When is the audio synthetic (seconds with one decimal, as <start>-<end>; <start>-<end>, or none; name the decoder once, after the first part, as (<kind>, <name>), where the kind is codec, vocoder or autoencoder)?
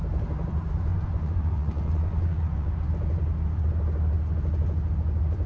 0.9-2.7 (vocoder, Vocos)